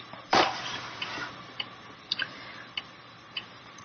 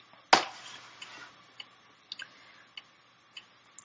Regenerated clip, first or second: first